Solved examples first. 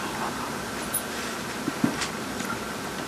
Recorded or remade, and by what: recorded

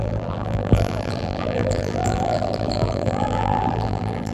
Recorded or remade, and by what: remade, vocoder, BigVGAN v2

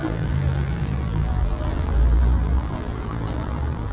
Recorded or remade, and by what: remade, vocoder, BigVGAN v2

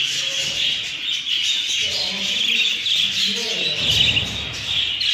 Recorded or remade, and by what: recorded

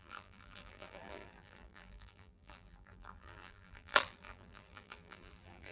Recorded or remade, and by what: remade, vocoder, BigVGAN v2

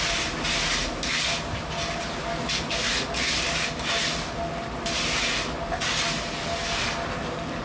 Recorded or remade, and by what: recorded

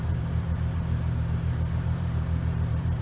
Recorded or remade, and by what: remade, vocoder, BigVGAN v2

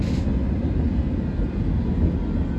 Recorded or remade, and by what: recorded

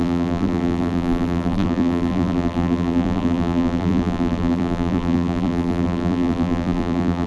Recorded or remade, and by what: remade, vocoder, BigVGAN v2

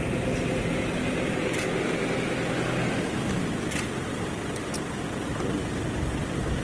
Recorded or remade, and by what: recorded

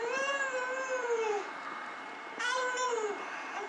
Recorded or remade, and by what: remade, vocoder, BigVGAN v2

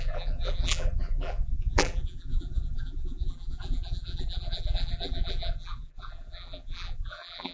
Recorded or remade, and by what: remade, vocoder, BigVGAN v2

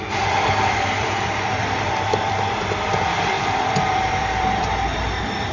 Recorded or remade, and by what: remade, vocoder, BigVGAN v2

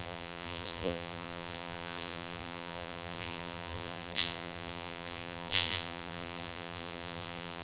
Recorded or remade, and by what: remade, vocoder, BigVGAN v2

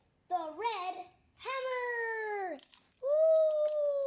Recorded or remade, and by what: recorded